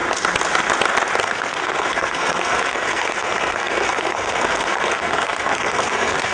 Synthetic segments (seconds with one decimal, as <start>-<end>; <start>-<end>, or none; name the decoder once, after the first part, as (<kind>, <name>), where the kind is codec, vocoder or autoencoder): 1.2-6.3 (codec, SNAC)